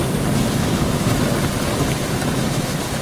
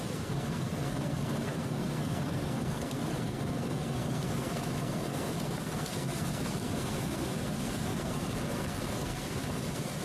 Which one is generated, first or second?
second